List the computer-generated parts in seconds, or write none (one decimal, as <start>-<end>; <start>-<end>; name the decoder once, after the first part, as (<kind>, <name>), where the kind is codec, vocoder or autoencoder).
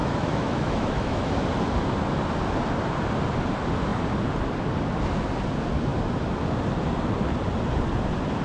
0.0-1.3 (autoencoder, DAC-VAE)